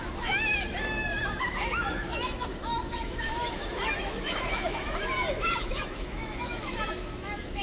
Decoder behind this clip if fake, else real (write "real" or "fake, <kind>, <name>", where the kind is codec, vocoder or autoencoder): fake, autoencoder, DAC-VAE